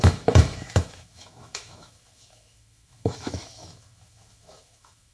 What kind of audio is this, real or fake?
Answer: fake